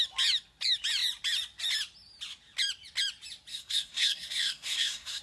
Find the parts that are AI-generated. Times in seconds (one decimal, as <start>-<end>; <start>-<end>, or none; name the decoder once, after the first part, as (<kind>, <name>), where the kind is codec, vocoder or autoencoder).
3.5-5.2 (codec, SNAC)